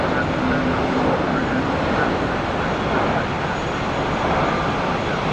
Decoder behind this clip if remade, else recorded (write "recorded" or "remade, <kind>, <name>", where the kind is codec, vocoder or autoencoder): recorded